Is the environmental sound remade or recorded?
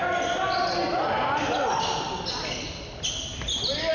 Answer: recorded